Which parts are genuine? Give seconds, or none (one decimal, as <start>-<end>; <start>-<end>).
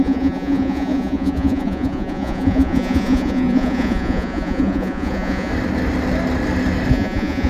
5.5-6.9